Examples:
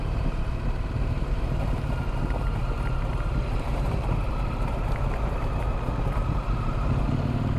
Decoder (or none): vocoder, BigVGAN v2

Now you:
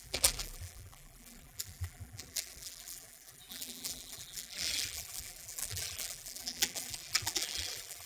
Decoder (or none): vocoder, BigVGAN v2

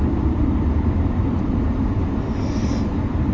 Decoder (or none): vocoder, BigVGAN v2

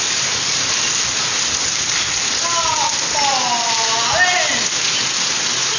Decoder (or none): none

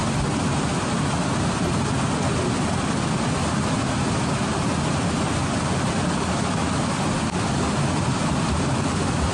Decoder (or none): none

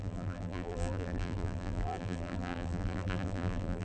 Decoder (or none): vocoder, BigVGAN v2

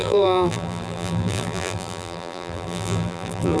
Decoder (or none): vocoder, BigVGAN v2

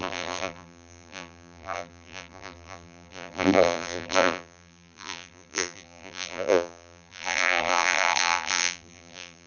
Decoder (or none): vocoder, BigVGAN v2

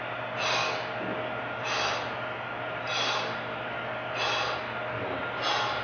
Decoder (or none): none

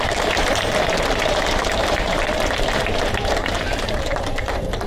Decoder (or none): vocoder, BigVGAN v2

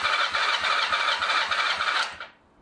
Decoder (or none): none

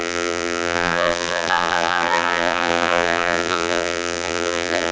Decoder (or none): vocoder, BigVGAN v2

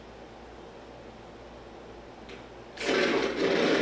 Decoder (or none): none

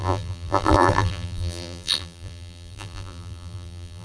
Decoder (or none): vocoder, BigVGAN v2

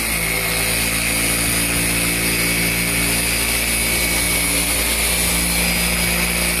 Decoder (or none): none